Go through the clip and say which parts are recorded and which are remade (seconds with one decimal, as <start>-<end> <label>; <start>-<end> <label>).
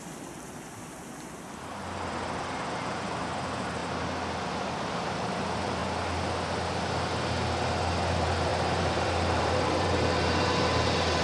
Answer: 0.0-3.8 remade; 3.8-4.7 recorded; 4.7-5.8 remade; 5.8-8.1 recorded; 8.1-11.2 remade